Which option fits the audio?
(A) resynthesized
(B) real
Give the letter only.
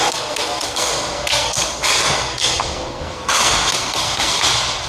A